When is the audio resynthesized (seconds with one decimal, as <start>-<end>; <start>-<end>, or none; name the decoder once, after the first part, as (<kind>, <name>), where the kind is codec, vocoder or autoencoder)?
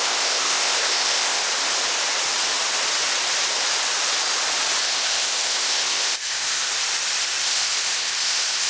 0.0-1.4 (codec, ZipCodec); 4.8-6.7; 7.4-8.7